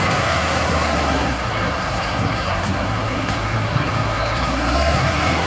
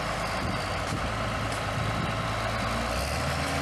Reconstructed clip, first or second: first